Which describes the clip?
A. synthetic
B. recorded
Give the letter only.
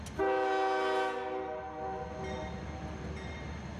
B